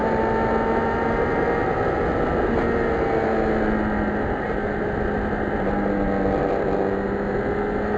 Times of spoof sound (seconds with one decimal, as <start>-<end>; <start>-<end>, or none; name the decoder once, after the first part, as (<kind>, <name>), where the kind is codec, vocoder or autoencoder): none